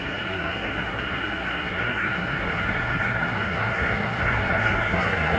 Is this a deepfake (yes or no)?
yes